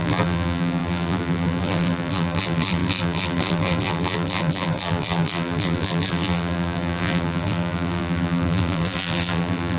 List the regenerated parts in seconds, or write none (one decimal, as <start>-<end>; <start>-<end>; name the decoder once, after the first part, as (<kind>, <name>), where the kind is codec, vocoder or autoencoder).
0.0-9.8 (vocoder, BigVGAN v2)